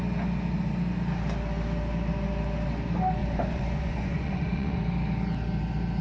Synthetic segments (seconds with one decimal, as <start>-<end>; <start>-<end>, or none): 3.2-4.8